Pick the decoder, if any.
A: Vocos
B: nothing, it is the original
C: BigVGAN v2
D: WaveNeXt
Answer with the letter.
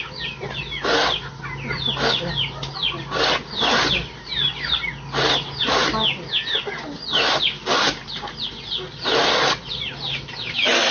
B